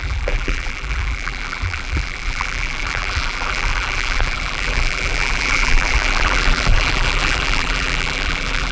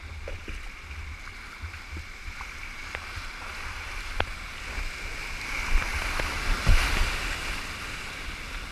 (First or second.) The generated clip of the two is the first